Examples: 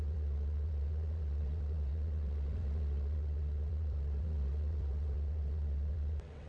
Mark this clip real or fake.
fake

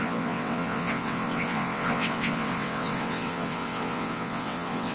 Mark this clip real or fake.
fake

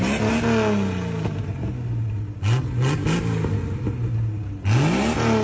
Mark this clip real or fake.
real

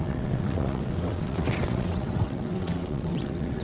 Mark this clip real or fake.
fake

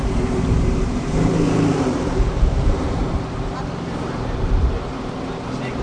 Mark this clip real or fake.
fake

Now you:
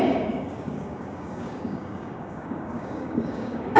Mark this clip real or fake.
fake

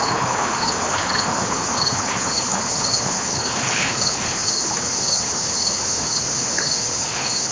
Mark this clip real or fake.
fake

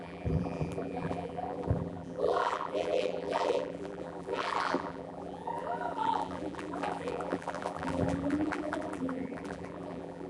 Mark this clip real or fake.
fake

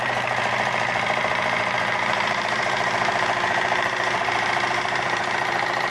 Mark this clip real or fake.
fake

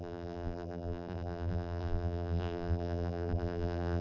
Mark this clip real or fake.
fake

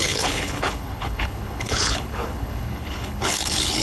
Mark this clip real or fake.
fake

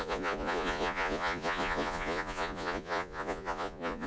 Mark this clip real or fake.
fake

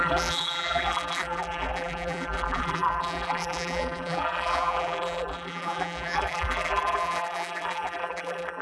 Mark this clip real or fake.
fake